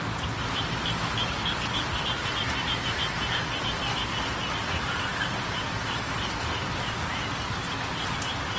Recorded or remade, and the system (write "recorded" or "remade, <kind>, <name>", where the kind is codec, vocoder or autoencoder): recorded